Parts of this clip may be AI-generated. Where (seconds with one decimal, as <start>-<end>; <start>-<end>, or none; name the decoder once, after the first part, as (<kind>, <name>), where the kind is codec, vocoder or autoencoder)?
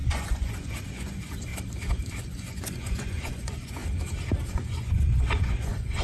0.0-1.5 (vocoder, Vocos); 2.2-3.8; 4.5-6.0